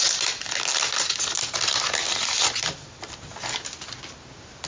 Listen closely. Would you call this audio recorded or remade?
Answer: recorded